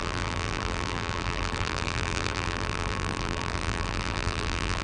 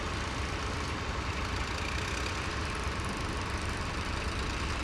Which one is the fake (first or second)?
first